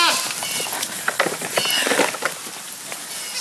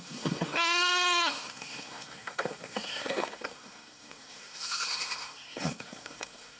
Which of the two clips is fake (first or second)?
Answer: second